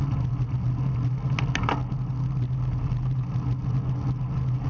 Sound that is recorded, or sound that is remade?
recorded